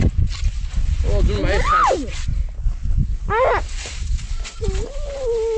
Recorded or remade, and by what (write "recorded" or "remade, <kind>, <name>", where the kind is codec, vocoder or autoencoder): recorded